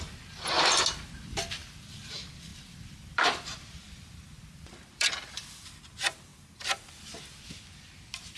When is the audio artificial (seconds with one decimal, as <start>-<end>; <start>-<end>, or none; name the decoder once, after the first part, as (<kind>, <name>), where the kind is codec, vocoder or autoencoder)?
1.6-2.1 (vocoder, BigVGAN v2); 2.5-5.8

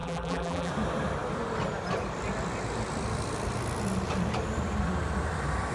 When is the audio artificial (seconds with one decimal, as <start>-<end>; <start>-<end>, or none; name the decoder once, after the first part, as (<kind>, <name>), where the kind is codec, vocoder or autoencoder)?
0.0-0.7 (vocoder, BigVGAN v2)

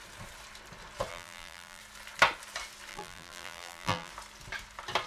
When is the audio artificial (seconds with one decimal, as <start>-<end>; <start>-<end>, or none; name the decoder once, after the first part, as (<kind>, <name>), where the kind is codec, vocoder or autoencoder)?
1.1-1.8 (vocoder, BigVGAN v2); 2.9-4.1

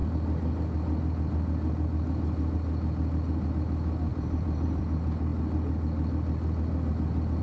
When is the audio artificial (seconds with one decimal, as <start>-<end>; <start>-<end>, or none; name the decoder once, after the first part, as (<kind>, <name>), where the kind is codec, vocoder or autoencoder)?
4.1-4.8 (vocoder, BigVGAN v2)

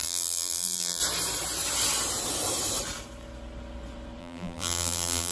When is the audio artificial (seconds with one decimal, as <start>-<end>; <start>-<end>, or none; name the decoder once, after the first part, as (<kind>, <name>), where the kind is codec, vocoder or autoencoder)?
0.0-1.0 (vocoder, BigVGAN v2); 4.2-5.3

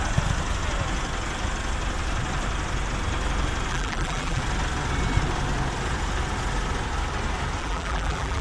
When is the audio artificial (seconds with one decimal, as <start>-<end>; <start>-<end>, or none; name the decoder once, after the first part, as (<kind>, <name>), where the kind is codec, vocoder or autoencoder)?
3.7-4.4 (vocoder, BigVGAN v2); 7.6-8.4

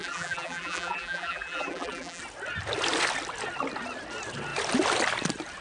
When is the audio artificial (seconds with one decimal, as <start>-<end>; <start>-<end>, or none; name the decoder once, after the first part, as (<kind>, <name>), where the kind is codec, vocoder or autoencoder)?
0.0-2.2 (vocoder, BigVGAN v2)

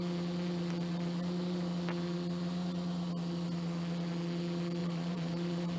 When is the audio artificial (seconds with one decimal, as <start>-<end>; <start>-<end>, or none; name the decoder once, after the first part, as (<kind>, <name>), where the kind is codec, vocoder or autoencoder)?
4.8-5.8 (vocoder, BigVGAN v2)